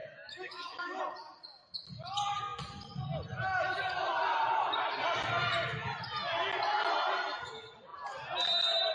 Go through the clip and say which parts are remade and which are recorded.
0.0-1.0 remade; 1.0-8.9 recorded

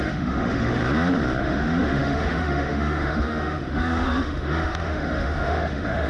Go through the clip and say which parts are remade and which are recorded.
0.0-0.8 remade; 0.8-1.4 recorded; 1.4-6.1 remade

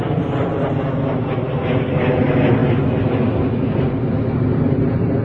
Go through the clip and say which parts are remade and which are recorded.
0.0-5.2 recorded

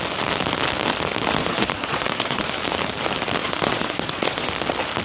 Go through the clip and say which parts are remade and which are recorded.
0.0-1.4 recorded; 1.4-2.5 remade; 2.5-3.4 recorded; 3.4-4.5 remade; 4.5-5.0 recorded

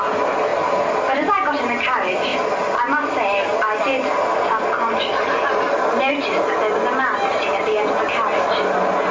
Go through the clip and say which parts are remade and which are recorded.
0.0-9.1 recorded